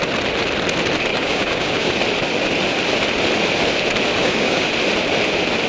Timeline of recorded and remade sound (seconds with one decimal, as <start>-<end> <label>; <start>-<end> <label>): 0.0-1.1 recorded; 1.1-1.9 remade; 1.9-4.2 recorded; 4.2-4.7 remade; 4.7-5.7 recorded